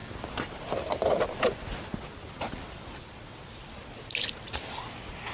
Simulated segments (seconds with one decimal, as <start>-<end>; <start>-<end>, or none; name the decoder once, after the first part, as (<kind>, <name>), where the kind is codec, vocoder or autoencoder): 0.0-3.2 (vocoder, BigVGAN v2)